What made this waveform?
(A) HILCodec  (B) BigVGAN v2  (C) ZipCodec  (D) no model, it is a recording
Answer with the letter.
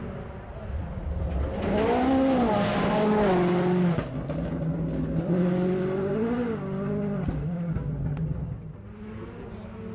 D